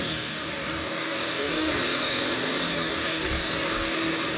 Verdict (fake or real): fake